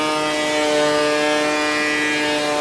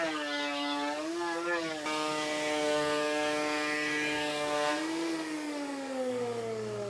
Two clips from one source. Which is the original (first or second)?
first